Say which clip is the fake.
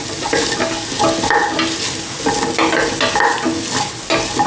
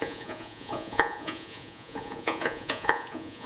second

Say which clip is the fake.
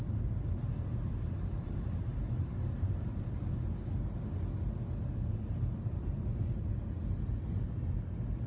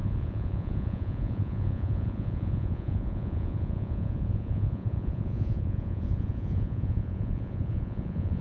second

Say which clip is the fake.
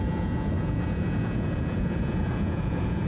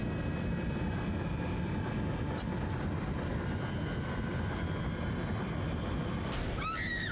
first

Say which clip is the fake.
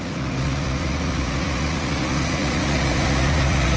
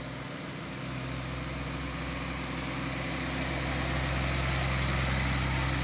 first